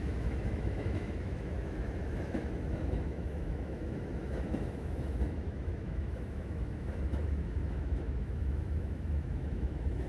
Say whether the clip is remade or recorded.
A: remade